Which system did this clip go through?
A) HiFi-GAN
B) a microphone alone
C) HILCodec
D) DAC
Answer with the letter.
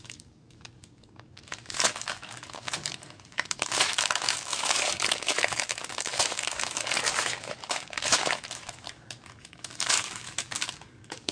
D